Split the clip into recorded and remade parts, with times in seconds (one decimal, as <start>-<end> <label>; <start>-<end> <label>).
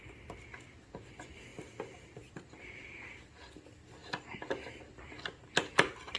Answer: 0.0-6.2 recorded